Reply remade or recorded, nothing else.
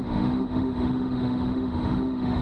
remade